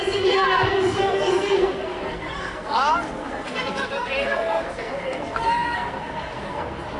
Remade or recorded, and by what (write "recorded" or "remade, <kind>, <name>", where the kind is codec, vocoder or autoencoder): remade, codec, SNAC